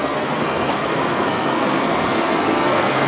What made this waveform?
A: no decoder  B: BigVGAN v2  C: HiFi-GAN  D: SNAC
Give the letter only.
D